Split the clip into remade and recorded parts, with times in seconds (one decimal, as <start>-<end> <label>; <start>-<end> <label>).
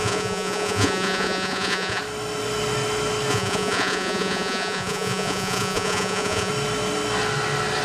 0.0-2.0 remade; 2.0-3.3 recorded; 3.3-6.5 remade; 6.5-7.8 recorded